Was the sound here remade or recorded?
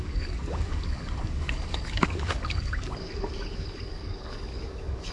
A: remade